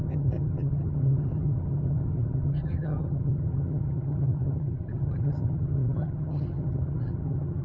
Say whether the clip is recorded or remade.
remade